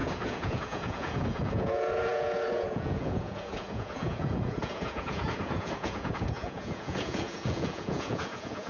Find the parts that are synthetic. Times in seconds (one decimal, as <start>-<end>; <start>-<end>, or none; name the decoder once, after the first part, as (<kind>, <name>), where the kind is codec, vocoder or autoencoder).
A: 0.0-8.7 (vocoder, Vocos)